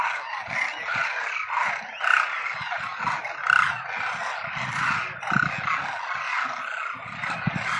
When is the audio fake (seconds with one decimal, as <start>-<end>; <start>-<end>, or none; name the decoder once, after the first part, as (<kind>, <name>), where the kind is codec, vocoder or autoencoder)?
none